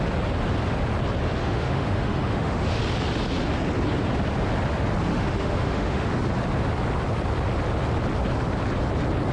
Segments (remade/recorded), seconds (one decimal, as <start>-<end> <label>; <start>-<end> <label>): 0.0-1.4 recorded; 1.4-2.8 remade; 2.8-5.1 recorded; 5.1-6.1 remade; 6.1-9.3 recorded